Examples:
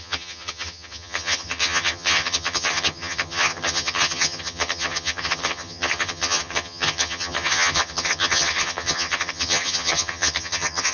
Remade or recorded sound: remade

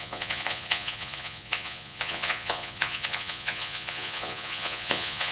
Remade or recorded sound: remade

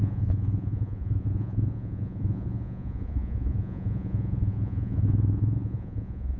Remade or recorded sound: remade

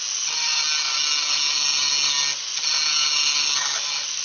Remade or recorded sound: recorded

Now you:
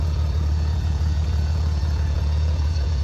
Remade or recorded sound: remade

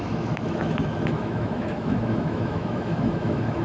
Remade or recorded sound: remade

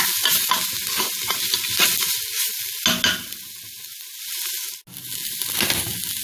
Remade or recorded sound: recorded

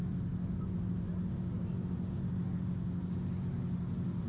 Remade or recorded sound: recorded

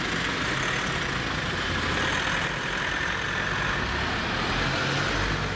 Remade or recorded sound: recorded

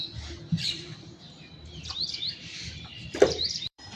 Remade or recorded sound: remade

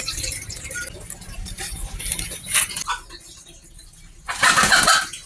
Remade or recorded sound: recorded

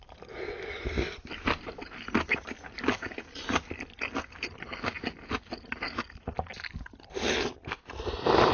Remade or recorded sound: recorded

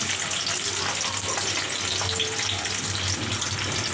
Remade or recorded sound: recorded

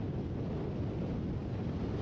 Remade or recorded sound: recorded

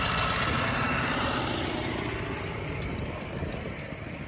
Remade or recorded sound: recorded